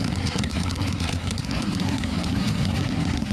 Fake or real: fake